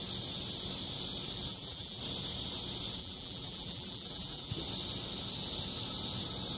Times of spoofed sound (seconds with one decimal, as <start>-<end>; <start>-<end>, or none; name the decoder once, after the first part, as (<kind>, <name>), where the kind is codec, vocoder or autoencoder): 1.5-2.0 (vocoder, BigVGAN v2); 3.0-4.5